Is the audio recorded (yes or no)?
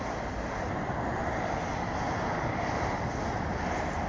yes